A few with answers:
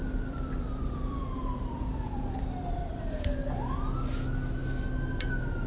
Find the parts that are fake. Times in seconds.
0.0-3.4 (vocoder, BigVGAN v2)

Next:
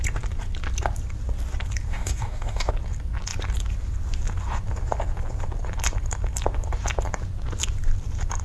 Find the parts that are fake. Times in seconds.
1.9-2.7 (codec, DAC)

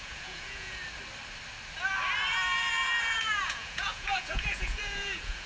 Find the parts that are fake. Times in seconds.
0.0-0.8 (vocoder, Vocos); 3.1-5.5